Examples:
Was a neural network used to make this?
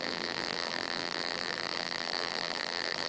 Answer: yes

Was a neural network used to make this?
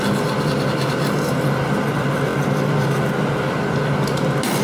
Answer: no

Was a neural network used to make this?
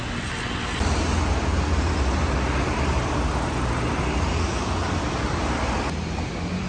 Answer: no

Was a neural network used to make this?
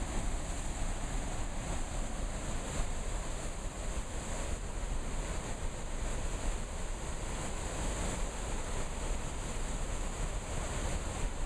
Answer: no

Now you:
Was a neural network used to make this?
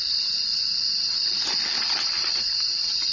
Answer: yes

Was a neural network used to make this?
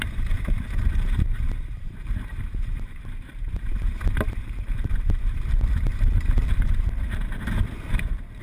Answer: yes